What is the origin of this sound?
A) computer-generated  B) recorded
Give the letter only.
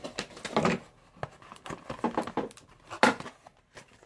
B